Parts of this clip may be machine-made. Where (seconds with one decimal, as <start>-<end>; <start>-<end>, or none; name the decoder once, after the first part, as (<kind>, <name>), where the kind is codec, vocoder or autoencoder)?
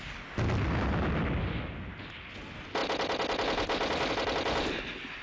none